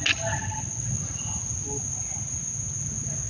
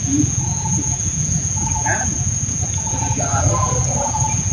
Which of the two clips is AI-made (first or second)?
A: second